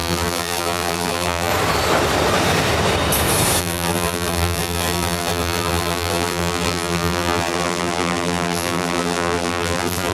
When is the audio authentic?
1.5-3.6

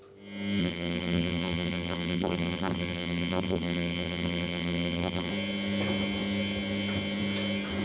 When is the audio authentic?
0.0-0.6; 5.3-7.8